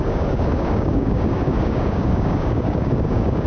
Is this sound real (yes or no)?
no